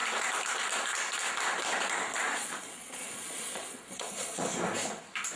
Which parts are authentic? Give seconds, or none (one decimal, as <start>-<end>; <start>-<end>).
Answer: 0.0-2.3; 4.4-5.4